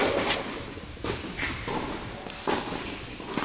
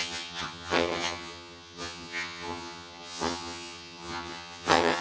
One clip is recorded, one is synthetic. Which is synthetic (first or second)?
second